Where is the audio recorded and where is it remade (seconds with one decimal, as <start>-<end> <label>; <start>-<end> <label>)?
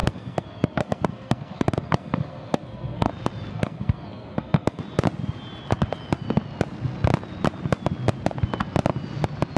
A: 0.0-3.1 remade; 3.1-3.5 recorded; 3.5-4.8 remade; 4.8-9.6 recorded